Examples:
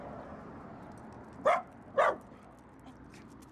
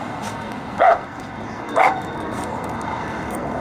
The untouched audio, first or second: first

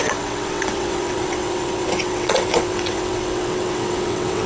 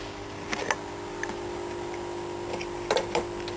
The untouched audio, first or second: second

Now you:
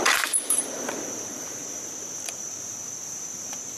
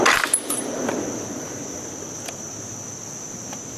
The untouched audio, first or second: second